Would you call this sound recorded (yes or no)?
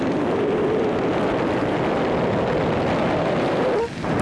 yes